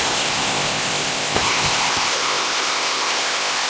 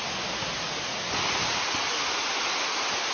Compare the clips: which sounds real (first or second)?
second